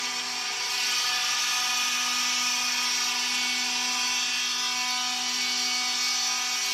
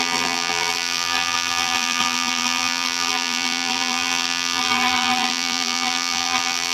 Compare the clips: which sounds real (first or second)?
first